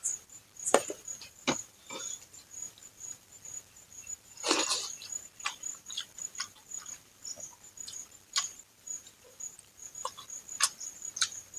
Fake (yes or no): yes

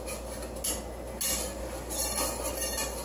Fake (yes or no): no